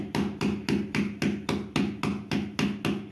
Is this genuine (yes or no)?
yes